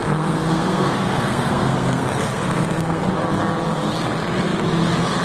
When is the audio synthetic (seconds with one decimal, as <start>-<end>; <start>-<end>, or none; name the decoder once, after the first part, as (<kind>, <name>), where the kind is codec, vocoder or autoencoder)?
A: 0.0-3.1 (codec, SNAC)